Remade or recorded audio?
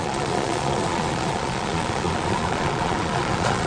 remade